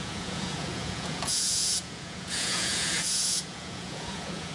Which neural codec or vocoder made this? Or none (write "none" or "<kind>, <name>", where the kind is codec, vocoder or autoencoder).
vocoder, Vocos